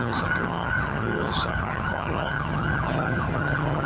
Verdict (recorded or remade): remade